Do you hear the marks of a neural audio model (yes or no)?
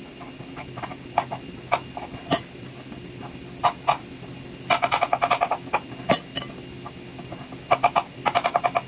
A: no